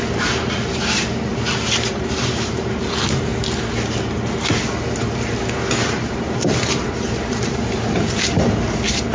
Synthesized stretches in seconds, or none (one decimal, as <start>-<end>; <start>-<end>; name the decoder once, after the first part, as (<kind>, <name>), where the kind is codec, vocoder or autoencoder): 0.0-1.3 (vocoder, BigVGAN v2); 1.9-3.3; 5.9-9.1